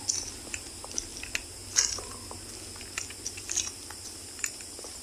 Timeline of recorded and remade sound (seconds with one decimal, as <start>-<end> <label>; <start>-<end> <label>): 0.0-5.0 recorded